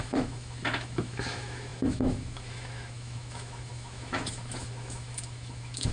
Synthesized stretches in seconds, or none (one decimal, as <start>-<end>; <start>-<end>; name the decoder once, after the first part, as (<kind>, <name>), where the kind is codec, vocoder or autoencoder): 0.0-5.9 (autoencoder, DAC-VAE)